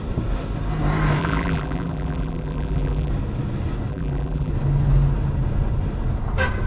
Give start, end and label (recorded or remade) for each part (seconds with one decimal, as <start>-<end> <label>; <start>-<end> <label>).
0.0-1.2 recorded; 1.2-3.1 remade; 3.1-3.9 recorded; 3.9-4.5 remade; 4.5-6.7 recorded